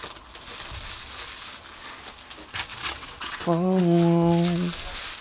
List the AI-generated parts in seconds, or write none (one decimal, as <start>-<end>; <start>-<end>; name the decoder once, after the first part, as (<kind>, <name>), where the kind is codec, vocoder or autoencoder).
2.7-3.8 (vocoder, WaveNeXt)